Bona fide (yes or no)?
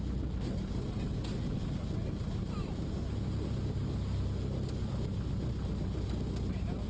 yes